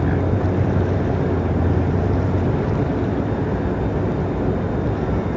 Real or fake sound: real